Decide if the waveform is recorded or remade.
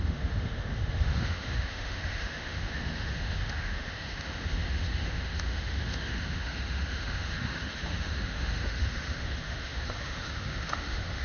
remade